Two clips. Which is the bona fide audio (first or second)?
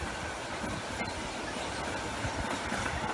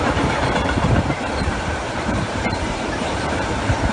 first